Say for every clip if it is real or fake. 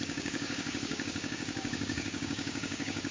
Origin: fake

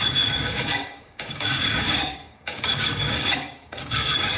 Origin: fake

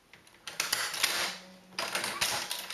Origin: real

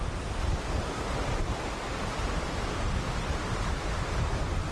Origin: real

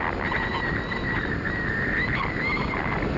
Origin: real